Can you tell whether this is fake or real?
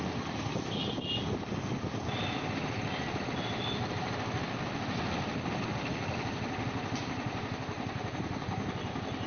real